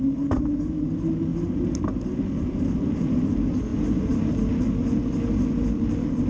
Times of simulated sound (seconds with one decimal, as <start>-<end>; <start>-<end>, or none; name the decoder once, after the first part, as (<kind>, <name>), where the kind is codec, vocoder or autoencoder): none